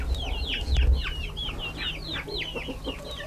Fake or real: real